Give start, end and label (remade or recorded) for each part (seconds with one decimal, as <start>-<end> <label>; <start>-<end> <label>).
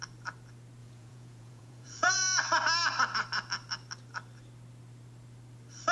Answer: 0.0-0.8 recorded; 0.8-2.4 remade; 2.4-5.9 recorded